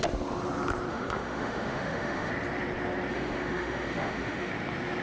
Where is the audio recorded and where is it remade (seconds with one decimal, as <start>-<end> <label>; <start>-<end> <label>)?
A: 0.0-0.9 recorded; 0.9-2.3 remade; 2.3-3.1 recorded; 3.1-4.5 remade; 4.5-5.0 recorded